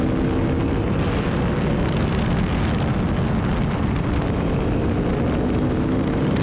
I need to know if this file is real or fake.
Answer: real